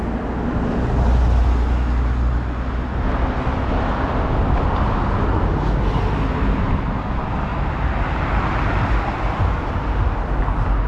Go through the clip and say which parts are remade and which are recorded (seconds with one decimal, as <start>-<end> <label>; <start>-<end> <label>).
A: 0.0-10.9 recorded